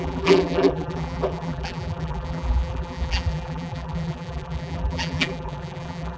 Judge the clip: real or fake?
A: fake